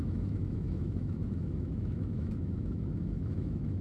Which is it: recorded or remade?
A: remade